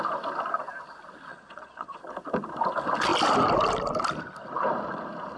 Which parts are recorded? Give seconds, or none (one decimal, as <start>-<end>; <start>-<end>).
0.0-1.3; 2.0-5.4